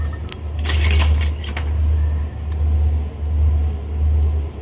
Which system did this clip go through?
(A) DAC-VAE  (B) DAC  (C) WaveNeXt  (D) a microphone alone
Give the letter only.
D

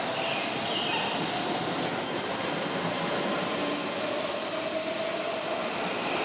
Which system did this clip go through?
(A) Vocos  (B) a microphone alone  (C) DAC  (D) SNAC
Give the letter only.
B